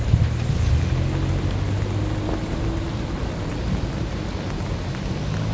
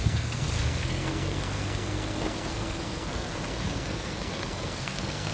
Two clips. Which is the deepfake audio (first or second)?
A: second